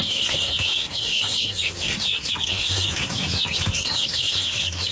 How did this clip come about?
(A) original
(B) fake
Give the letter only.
B